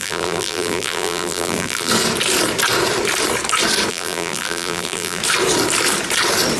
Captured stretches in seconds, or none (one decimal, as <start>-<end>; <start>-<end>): 1.9-3.9; 5.2-6.6